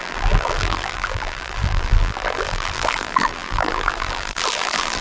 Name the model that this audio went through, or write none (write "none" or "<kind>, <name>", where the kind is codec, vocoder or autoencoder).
vocoder, BigVGAN v2